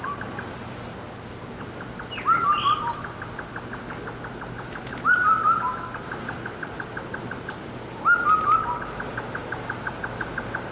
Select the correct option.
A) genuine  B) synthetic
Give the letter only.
A